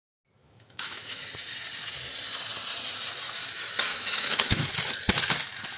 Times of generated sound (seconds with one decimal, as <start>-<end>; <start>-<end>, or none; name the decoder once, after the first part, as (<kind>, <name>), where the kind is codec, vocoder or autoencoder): 0.4-1.2 (autoencoder, DAC-VAE); 3.9-4.7